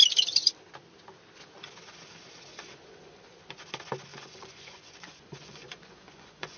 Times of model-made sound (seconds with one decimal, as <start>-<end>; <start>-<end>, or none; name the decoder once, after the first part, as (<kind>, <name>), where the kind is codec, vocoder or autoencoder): 2.5-3.4 (vocoder, Vocos); 4.1-6.6